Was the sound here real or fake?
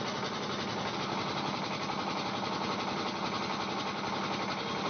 real